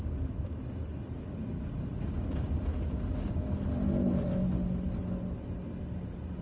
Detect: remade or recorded recorded